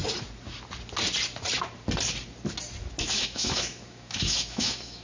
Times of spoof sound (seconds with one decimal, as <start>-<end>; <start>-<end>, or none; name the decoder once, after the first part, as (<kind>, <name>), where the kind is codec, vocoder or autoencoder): 3.0-5.0 (autoencoder, DAC-VAE)